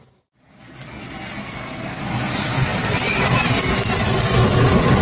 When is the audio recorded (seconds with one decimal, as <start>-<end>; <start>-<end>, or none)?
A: 0.0-1.4; 2.0-5.0